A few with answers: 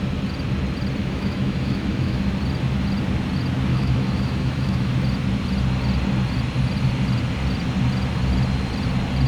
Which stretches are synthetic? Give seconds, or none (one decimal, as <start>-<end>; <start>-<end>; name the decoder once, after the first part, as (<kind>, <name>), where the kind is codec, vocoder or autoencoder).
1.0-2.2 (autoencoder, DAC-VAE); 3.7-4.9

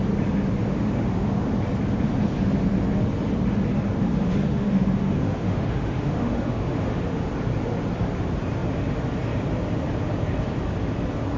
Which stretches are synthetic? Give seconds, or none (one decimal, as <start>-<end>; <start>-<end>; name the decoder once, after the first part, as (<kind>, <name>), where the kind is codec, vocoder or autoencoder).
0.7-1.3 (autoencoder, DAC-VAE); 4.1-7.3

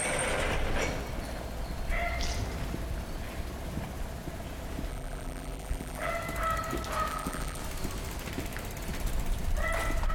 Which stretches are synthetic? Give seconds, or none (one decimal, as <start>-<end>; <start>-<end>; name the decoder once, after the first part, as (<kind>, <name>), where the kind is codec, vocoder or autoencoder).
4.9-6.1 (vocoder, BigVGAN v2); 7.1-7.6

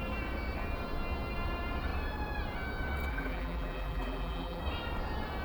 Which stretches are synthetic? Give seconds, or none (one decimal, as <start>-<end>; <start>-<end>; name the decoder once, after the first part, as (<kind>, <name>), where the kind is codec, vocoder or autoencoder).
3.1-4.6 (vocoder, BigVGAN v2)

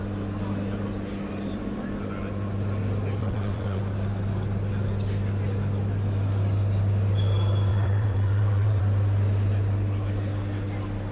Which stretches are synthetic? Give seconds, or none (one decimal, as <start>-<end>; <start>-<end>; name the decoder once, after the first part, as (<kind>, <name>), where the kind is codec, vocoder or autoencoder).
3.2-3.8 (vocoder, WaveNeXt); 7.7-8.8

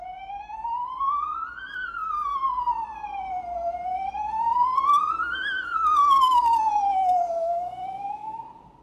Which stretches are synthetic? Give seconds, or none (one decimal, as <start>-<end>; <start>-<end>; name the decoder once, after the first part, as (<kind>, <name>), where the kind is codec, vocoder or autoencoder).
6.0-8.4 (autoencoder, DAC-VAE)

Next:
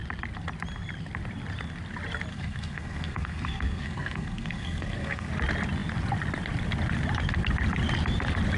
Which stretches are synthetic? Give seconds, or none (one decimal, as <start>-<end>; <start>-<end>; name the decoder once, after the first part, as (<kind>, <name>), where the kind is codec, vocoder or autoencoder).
2.3-5.3 (codec, SNAC)